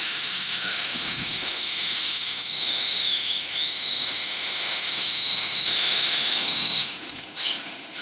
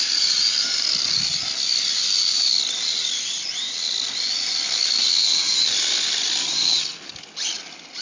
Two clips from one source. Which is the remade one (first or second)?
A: first